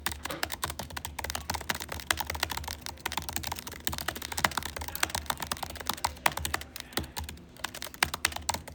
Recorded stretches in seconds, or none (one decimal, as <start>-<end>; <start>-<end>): 0.9-8.7